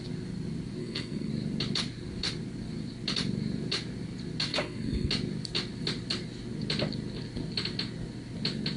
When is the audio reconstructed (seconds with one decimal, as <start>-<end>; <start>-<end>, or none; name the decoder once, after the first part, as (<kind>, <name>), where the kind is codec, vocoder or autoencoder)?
0.8-1.3 (codec, SNAC); 4.5-5.1